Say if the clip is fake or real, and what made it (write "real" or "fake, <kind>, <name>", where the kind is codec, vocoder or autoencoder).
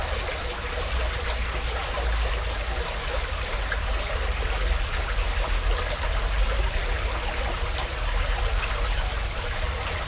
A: real